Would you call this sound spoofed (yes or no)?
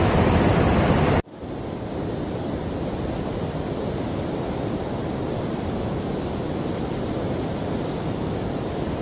yes